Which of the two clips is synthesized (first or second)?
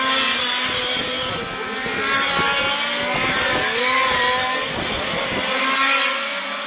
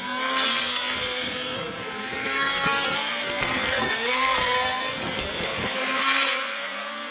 second